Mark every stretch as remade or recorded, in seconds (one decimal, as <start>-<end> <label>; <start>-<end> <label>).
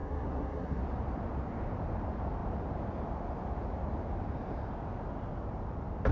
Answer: 0.0-0.8 remade; 0.8-6.1 recorded